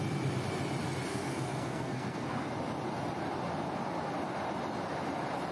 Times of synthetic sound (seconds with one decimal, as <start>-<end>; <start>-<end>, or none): 1.1-2.5